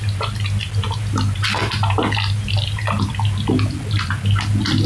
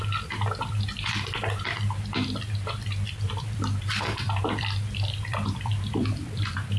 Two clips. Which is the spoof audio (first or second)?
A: second